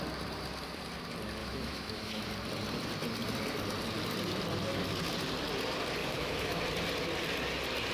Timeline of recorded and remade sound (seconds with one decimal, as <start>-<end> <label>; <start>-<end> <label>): 0.0-1.4 recorded; 1.4-2.3 remade; 2.3-6.0 recorded; 6.0-6.6 remade; 6.6-7.9 recorded